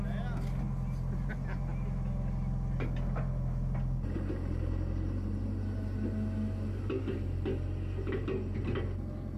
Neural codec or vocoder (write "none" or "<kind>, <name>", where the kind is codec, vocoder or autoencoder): none